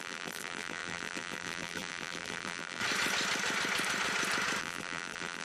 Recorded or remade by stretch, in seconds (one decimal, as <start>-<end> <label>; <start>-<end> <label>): 0.0-2.8 remade; 2.8-4.6 recorded; 4.6-5.4 remade